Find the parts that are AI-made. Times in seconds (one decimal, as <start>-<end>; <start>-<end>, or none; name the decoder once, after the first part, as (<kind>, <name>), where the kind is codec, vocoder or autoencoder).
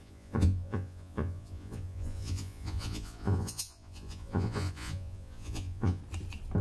0.0-6.0 (vocoder, Vocos)